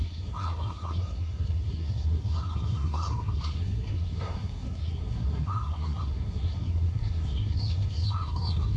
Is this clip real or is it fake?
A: fake